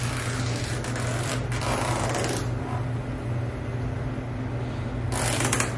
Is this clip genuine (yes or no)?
yes